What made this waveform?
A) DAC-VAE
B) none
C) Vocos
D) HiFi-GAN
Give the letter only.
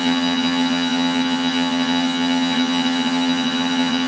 D